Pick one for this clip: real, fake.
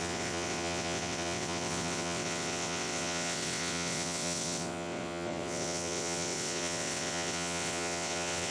fake